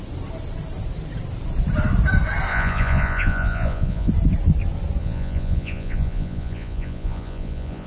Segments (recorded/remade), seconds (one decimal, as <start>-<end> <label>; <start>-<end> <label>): 0.0-2.5 recorded; 2.5-4.1 remade; 4.1-5.0 recorded; 5.0-7.9 remade